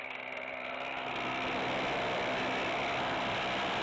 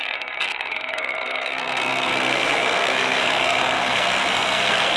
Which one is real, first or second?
first